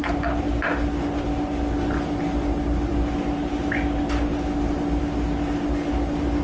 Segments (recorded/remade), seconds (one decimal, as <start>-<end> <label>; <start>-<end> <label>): 0.0-6.4 recorded